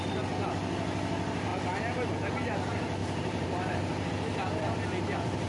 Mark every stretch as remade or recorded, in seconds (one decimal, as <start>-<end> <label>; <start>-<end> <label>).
0.0-3.0 recorded; 3.0-4.1 remade; 4.1-5.5 recorded

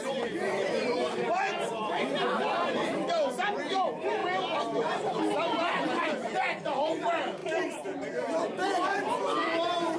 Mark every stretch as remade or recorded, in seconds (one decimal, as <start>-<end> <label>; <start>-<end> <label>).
0.0-10.0 remade

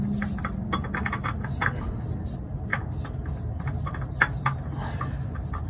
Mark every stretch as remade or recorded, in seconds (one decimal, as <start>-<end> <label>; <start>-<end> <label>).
0.0-5.7 recorded

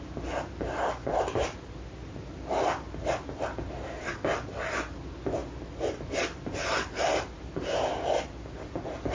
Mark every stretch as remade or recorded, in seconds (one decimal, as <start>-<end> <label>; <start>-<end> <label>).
0.0-9.1 recorded

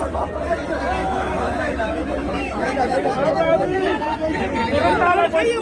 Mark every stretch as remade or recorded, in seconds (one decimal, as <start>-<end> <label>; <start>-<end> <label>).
0.0-1.0 recorded; 1.0-4.4 remade; 4.4-5.6 recorded

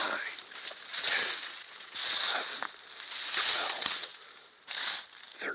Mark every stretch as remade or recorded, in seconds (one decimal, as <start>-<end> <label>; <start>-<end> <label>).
0.0-0.9 recorded; 0.9-2.3 remade; 2.3-3.4 recorded; 3.4-4.1 remade; 4.1-5.5 recorded